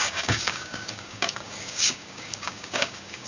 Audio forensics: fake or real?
fake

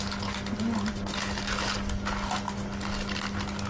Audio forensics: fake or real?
real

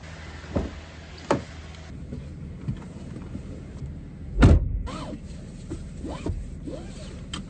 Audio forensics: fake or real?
real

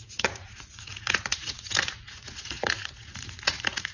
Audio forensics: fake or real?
fake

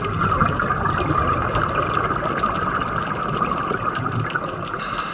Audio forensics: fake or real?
real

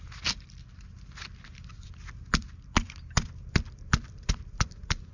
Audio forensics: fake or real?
real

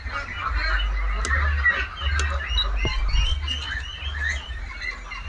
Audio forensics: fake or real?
real